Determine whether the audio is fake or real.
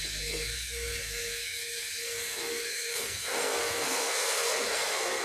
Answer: fake